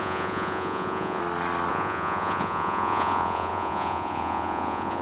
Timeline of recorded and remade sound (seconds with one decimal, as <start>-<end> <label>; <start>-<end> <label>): 0.0-1.2 remade; 1.2-1.7 recorded; 1.7-5.0 remade